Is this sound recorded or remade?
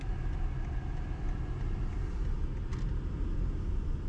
recorded